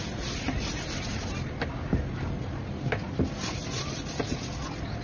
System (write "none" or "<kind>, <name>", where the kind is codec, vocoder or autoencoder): none